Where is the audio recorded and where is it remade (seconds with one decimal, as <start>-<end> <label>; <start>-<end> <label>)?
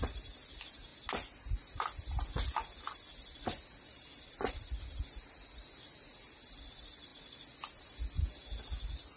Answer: 0.0-9.2 recorded